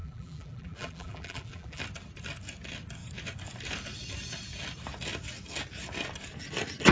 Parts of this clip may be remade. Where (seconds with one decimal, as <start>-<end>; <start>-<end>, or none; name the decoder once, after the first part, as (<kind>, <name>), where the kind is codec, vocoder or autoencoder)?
0.0-1.8 (vocoder, BigVGAN v2)